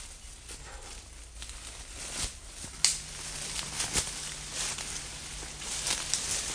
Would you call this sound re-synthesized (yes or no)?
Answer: no